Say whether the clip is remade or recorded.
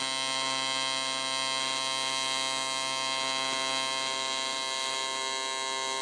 recorded